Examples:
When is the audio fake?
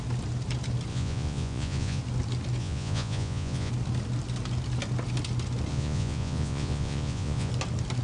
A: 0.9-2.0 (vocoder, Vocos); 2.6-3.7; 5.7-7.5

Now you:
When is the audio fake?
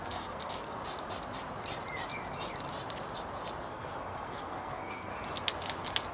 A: 0.0-0.8 (codec, SNAC); 3.6-5.1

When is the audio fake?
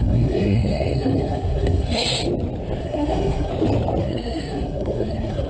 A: 0.0-2.2 (codec, SNAC); 2.8-3.5; 4.0-5.5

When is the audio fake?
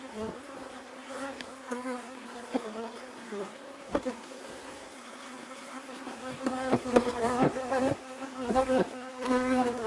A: 0.0-9.9 (codec, SNAC)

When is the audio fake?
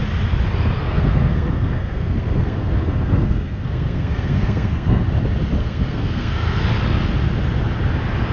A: 0.8-5.0 (codec, SNAC); 5.6-6.6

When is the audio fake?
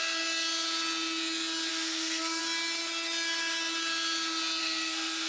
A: 1.7-2.4 (codec, SNAC); 4.6-5.3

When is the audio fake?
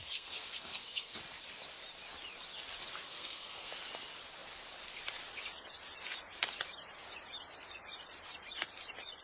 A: 0.0-1.1 (codec, SNAC); 3.1-3.7